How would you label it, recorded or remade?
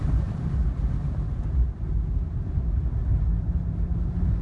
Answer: recorded